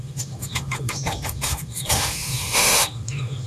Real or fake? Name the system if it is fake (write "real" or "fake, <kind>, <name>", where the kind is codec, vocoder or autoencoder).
fake, autoencoder, DAC-VAE